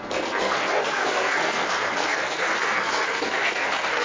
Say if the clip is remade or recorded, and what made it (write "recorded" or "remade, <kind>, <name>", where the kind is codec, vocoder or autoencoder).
remade, codec, SNAC